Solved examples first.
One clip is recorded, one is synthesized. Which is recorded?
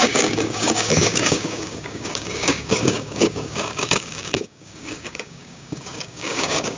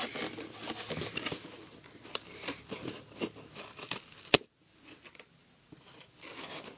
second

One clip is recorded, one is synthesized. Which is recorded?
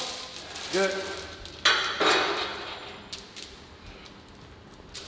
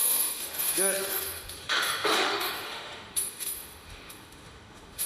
first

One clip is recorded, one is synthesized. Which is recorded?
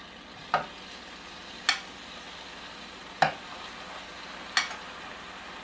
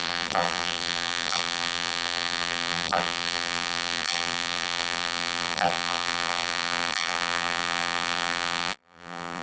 first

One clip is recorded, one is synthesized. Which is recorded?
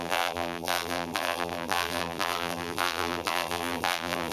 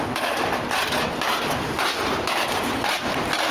second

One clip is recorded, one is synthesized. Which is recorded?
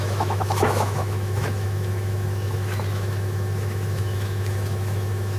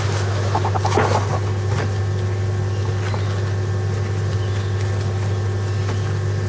second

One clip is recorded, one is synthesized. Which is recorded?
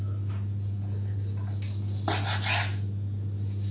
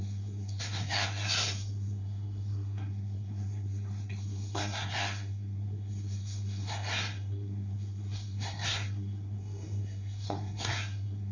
first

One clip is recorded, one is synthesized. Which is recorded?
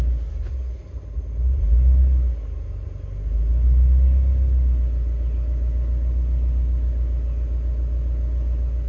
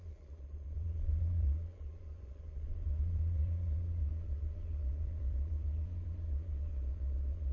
first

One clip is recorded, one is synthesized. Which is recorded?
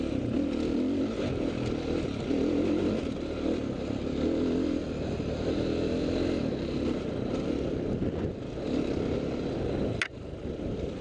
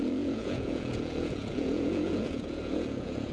first